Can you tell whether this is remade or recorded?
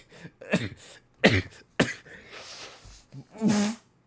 recorded